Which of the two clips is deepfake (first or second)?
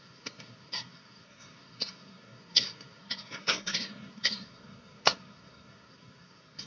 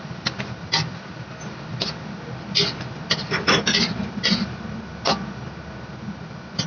first